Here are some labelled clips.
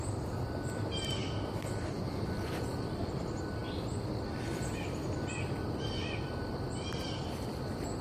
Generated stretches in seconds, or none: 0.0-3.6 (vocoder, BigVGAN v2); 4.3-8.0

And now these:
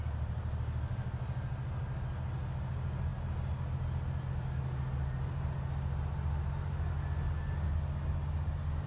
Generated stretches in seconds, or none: none

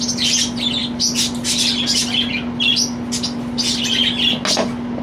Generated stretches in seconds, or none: none

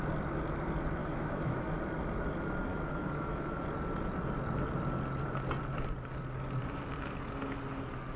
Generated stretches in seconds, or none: 1.0-1.7 (autoencoder, DAC-VAE); 2.7-3.6

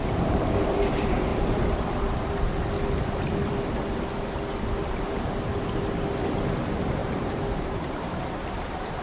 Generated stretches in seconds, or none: 1.3-2.5 (vocoder, BigVGAN v2); 7.0-9.0